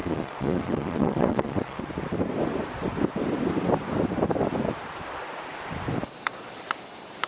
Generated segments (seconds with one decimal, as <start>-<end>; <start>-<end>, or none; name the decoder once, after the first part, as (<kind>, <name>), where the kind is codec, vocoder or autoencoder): 0.0-1.8 (vocoder, Vocos)